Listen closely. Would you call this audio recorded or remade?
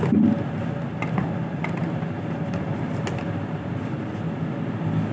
recorded